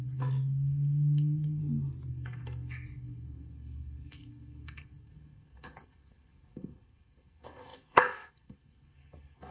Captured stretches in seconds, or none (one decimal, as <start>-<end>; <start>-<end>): 1.6-2.1